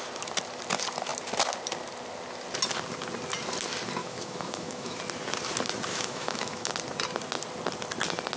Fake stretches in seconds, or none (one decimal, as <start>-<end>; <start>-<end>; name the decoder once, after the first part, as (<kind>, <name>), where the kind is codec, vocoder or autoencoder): 4.0-5.0 (autoencoder, DAC-VAE); 5.9-6.7